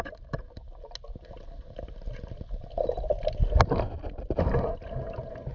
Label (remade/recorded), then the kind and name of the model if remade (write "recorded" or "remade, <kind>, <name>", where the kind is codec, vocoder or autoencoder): recorded